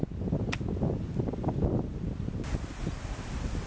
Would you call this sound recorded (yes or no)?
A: yes